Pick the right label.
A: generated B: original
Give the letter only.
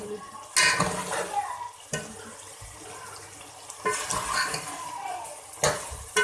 B